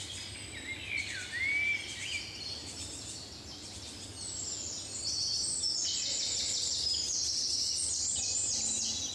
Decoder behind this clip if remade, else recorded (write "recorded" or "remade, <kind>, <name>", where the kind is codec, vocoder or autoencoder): recorded